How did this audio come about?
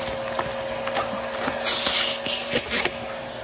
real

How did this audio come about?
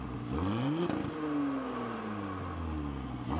real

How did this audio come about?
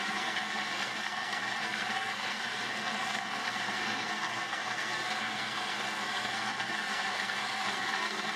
fake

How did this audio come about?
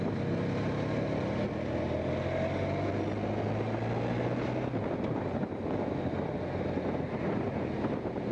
real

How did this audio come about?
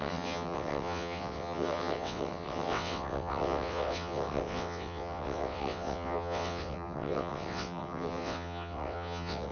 fake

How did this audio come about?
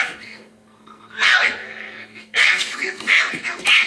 fake